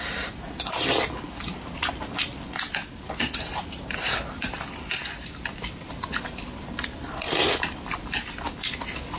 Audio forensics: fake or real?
real